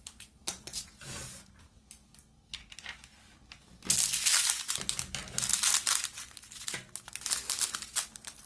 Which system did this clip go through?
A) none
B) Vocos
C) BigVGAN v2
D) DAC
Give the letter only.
A